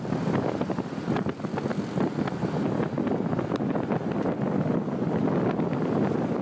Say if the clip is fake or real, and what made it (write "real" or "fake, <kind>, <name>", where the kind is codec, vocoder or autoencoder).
real